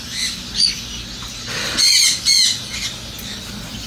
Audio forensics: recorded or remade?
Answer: recorded